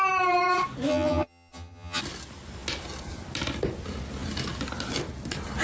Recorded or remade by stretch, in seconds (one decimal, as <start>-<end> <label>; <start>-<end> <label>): 0.0-0.9 recorded; 0.9-2.0 remade; 2.0-5.6 recorded

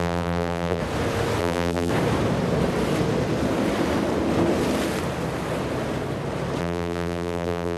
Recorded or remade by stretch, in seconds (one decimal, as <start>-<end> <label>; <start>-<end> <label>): 0.0-0.8 remade; 0.8-1.4 recorded; 1.4-1.9 remade; 1.9-6.6 recorded; 6.6-7.8 remade

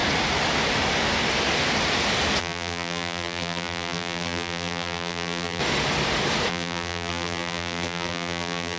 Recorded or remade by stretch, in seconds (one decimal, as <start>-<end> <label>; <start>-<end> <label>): 0.0-2.4 recorded; 2.4-5.6 remade; 5.6-6.5 recorded; 6.5-8.8 remade

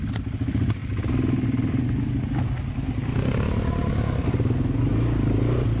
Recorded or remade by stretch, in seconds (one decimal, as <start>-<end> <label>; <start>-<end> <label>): 0.0-5.8 recorded

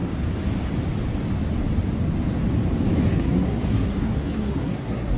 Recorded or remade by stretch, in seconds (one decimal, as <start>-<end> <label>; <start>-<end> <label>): 0.0-3.1 recorded; 3.1-5.2 remade

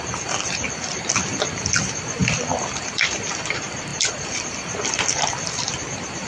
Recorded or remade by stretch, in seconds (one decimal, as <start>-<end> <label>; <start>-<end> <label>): 0.0-2.2 remade; 2.2-2.8 recorded; 2.8-6.3 remade

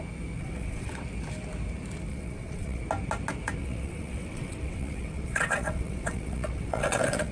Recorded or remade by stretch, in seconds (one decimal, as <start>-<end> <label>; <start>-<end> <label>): 0.0-0.4 recorded; 0.4-1.0 remade; 1.0-2.1 recorded; 2.1-2.8 remade; 2.8-3.6 recorded; 3.6-7.3 remade

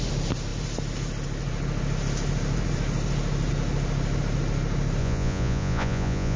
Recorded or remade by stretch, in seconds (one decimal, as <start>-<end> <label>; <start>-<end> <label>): 0.0-5.0 recorded; 5.0-6.4 remade